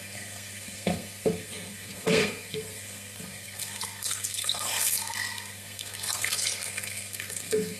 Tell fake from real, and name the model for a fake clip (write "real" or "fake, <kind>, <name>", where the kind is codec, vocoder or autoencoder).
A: fake, codec, SNAC